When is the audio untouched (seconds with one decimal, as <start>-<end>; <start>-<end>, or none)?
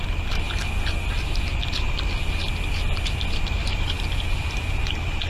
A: 0.0-3.6; 4.8-5.3